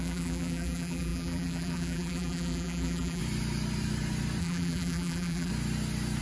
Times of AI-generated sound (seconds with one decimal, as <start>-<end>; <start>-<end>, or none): 0.0-3.2; 4.4-5.5